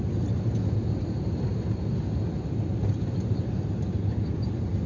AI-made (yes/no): no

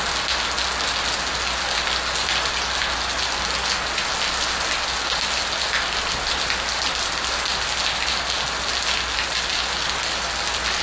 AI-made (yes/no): no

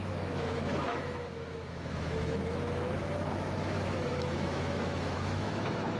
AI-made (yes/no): yes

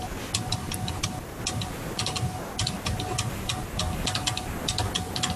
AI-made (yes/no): no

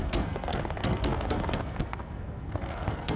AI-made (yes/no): yes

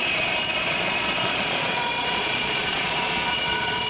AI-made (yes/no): yes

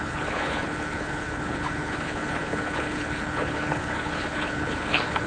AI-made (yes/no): yes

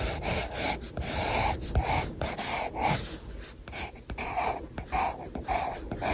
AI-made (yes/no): no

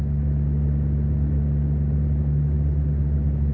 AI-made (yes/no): no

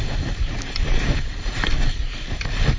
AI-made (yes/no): no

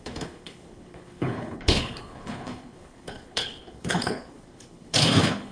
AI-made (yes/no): yes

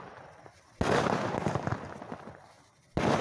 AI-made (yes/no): no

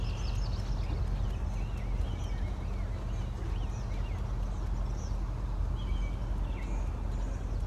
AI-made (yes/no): no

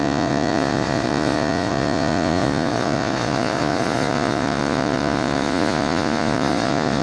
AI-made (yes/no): yes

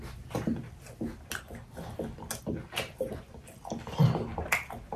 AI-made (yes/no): no